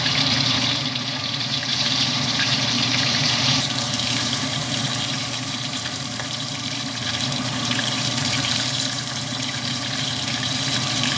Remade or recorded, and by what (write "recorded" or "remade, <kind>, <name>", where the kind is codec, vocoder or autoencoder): remade, vocoder, BigVGAN v2